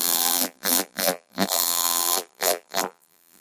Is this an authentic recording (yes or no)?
no